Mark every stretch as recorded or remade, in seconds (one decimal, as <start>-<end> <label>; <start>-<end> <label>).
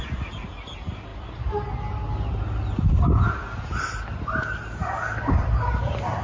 0.0-6.2 recorded